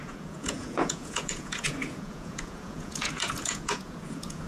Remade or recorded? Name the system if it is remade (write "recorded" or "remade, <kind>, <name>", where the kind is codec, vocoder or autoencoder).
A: remade, vocoder, Vocos